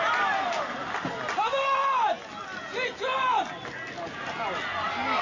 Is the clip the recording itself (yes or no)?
yes